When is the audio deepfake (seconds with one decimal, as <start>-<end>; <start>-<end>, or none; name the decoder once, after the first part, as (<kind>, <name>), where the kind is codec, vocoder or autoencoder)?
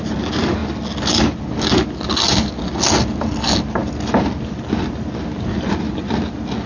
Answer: none